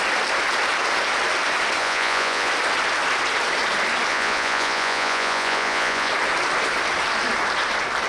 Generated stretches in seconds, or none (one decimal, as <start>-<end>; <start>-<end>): 1.8-2.5; 4.1-6.1

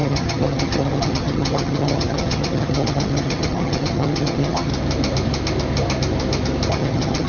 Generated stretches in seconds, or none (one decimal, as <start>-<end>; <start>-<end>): 0.0-4.7; 6.7-7.3

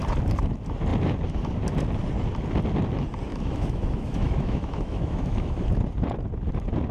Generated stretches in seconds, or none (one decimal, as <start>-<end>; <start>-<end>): 3.3-5.7

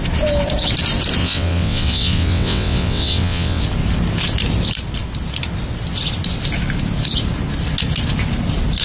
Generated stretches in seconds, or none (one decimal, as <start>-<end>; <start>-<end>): 1.2-3.6

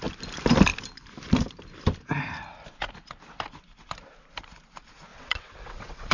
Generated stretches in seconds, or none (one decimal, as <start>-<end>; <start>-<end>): 5.1-6.1

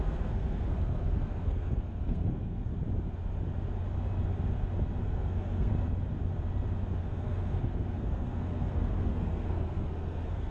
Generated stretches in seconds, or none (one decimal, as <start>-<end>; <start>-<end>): 0.0-2.7; 5.0-5.7; 7.0-10.5

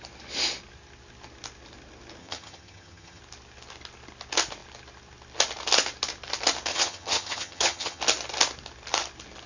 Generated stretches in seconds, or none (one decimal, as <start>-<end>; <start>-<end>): 2.2-3.2; 6.7-8.0

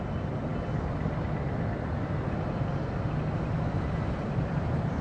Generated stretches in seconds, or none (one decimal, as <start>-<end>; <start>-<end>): none